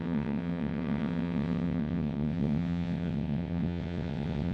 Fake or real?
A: fake